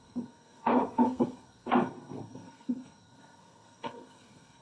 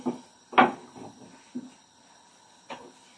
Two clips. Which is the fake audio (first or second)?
first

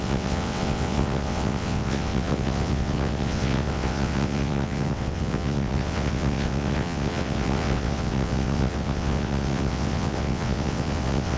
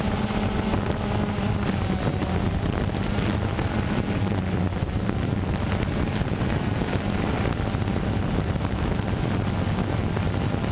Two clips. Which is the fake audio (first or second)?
first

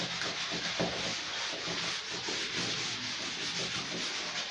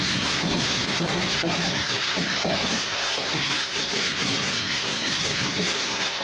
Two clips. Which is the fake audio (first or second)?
second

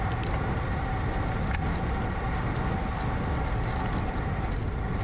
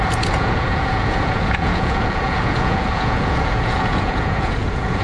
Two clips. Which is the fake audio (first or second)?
second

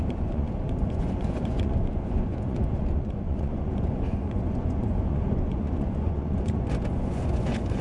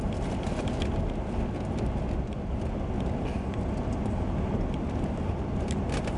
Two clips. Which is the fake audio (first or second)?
first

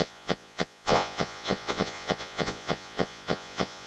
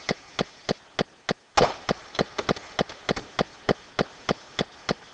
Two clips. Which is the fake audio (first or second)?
first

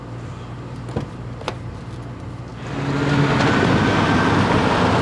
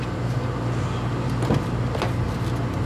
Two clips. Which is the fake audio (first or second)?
first